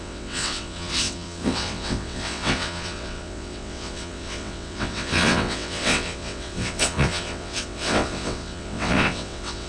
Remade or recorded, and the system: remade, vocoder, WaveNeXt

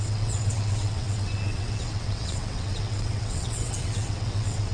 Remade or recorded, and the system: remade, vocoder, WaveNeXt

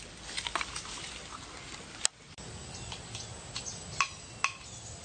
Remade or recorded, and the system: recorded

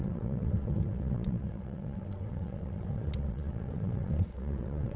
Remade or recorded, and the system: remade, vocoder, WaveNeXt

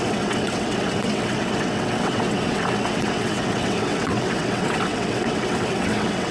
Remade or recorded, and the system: remade, vocoder, WaveNeXt